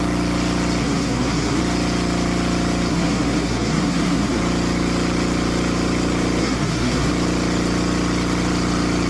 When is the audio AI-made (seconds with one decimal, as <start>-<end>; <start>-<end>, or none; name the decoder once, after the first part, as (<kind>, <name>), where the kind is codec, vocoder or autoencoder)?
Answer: 0.8-1.6 (codec, SNAC); 2.9-4.4; 6.4-7.1